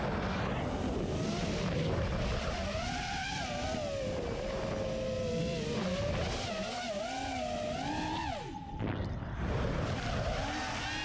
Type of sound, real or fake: real